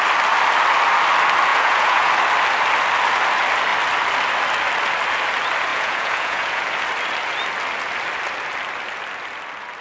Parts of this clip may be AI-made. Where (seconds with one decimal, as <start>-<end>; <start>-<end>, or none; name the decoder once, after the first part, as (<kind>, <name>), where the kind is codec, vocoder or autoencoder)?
1.5-2.1 (vocoder, Vocos); 5.7-6.6